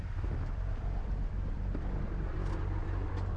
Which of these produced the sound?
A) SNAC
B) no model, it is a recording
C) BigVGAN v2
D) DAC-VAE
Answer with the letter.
B